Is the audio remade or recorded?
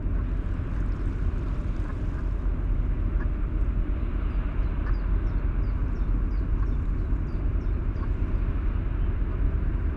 recorded